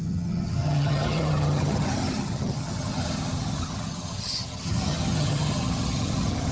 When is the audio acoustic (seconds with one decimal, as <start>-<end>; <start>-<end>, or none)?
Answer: none